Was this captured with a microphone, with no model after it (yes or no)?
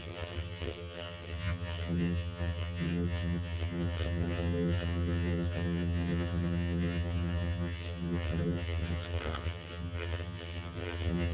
no